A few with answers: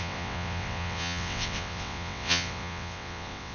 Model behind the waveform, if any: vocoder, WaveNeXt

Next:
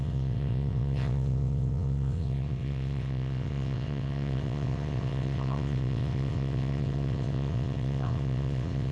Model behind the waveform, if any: vocoder, WaveNeXt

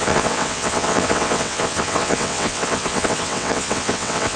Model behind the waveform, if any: vocoder, WaveNeXt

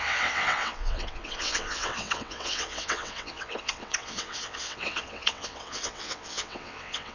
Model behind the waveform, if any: vocoder, WaveNeXt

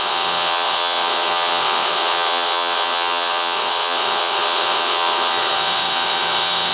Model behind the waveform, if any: vocoder, WaveNeXt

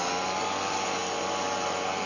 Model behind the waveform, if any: none